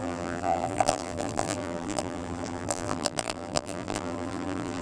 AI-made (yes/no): yes